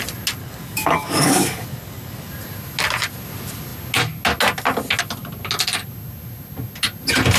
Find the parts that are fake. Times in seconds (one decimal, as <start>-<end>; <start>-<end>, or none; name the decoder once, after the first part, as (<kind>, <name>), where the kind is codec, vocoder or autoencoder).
0.4-2.3 (codec, DAC)

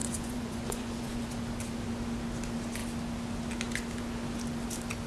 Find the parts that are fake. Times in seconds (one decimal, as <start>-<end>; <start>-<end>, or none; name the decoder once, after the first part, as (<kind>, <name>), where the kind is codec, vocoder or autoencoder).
0.0-1.3 (vocoder, Vocos)

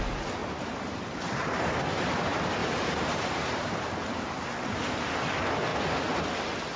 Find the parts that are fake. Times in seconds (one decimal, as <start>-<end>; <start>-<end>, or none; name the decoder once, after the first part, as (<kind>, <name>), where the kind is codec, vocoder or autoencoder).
0.4-1.7 (vocoder, BigVGAN v2); 2.6-5.0; 5.7-6.2

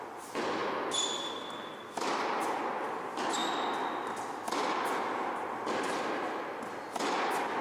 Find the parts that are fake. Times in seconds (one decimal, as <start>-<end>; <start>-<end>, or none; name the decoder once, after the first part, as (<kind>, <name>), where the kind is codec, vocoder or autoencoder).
none

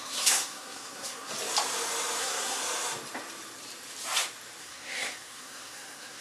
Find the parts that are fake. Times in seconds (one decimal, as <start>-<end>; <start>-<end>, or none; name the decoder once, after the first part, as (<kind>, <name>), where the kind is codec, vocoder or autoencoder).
0.0-1.3 (codec, SNAC); 2.2-2.6; 4.6-6.2